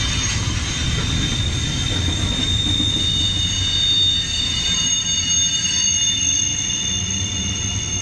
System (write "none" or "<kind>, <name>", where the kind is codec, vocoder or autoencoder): none